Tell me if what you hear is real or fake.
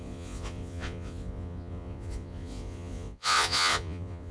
fake